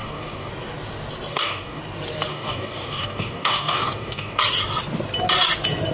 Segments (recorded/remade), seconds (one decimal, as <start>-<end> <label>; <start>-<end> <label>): 0.0-0.5 remade; 0.5-1.3 recorded; 1.3-1.8 remade; 1.8-2.3 recorded; 2.3-4.4 remade; 4.4-5.9 recorded

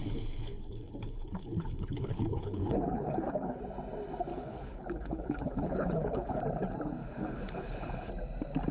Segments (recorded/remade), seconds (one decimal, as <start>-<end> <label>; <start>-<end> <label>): 0.0-3.6 remade; 3.6-4.3 recorded; 4.3-6.4 remade; 6.4-7.0 recorded; 7.0-8.1 remade; 8.1-8.7 recorded

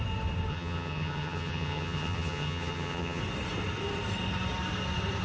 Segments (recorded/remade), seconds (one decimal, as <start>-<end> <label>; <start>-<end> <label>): 0.0-0.5 recorded; 0.5-3.2 remade; 3.2-5.2 recorded